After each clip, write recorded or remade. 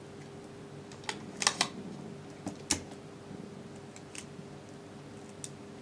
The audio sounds recorded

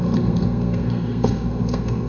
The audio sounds remade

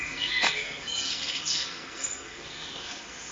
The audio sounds remade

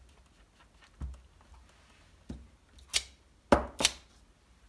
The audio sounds recorded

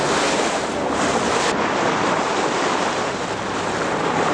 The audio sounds recorded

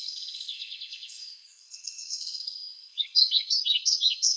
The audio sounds remade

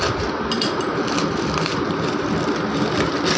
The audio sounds recorded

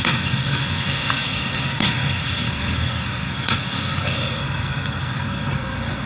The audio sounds remade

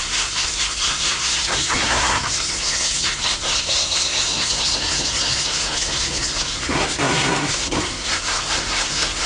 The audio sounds remade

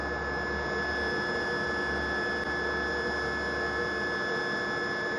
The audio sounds recorded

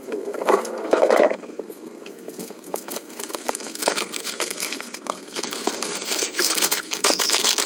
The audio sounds remade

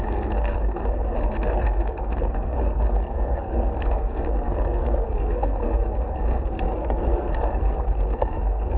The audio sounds remade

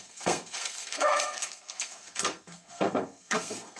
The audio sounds remade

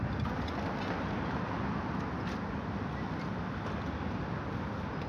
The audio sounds recorded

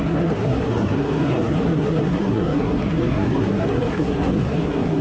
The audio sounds remade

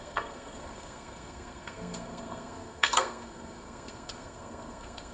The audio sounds remade